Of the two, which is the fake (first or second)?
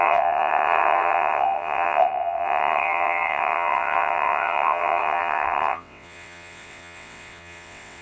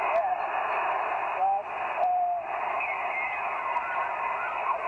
first